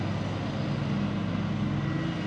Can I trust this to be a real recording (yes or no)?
yes